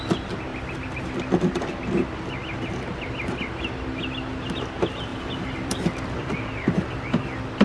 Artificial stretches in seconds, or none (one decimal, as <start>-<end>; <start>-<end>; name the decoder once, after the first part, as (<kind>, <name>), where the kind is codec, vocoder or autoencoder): 0.5-1.1 (vocoder, BigVGAN v2); 5.1-7.6